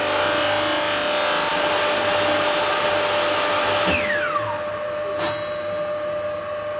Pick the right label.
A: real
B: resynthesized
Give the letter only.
A